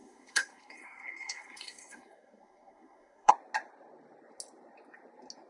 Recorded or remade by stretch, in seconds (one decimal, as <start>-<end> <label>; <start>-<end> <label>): 0.0-3.3 remade; 3.3-5.5 recorded